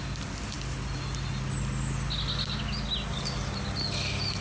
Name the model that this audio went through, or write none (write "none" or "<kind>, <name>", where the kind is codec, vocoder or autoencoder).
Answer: none